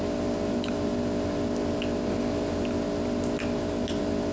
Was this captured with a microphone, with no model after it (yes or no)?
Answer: yes